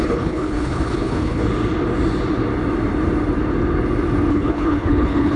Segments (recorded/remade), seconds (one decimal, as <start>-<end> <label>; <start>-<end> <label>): 0.0-1.4 remade; 1.4-4.3 recorded; 4.3-5.4 remade